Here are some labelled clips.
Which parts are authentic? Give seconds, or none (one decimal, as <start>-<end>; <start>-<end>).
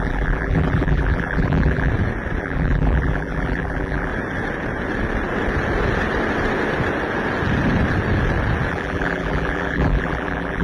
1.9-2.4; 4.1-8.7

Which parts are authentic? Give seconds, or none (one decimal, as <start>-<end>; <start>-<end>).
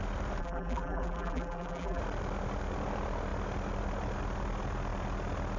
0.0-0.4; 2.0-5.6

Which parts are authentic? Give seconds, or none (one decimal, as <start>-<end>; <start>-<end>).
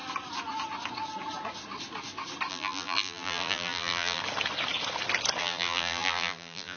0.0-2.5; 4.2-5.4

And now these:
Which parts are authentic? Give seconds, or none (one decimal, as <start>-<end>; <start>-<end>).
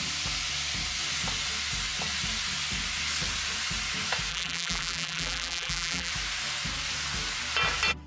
0.0-4.3; 6.1-8.1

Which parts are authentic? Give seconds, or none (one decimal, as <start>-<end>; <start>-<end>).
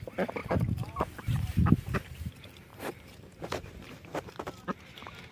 0.0-0.4; 2.3-2.7; 4.5-5.3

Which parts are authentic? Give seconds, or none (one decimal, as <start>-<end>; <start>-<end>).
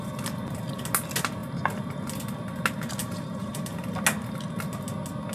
0.0-3.0; 3.9-5.3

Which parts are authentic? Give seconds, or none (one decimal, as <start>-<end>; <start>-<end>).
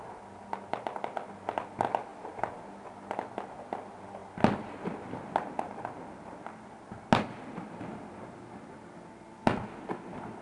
0.0-10.4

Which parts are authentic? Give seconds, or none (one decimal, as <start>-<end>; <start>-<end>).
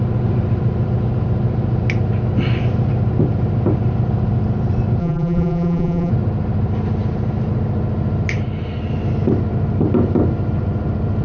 0.0-5.0; 6.1-11.2